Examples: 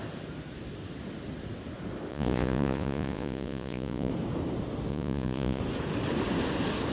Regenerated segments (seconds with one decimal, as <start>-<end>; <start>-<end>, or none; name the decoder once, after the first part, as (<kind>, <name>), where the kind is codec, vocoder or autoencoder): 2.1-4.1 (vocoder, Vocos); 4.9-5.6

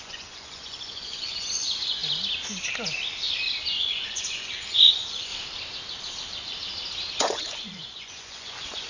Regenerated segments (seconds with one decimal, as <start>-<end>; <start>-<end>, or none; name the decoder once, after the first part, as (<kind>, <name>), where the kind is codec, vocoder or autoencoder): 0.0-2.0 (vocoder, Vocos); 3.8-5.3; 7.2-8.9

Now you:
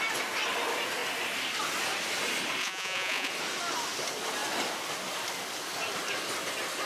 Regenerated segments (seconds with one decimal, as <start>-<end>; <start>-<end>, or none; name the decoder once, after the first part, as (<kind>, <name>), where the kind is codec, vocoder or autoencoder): 2.6-3.3 (vocoder, Vocos)

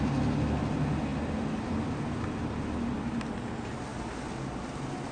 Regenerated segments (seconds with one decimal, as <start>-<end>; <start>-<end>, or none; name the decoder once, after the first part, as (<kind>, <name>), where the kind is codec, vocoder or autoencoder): none